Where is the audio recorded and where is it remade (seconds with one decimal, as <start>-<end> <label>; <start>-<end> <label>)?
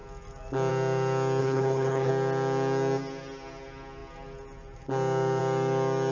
0.0-1.4 recorded; 1.4-2.1 remade; 2.1-6.1 recorded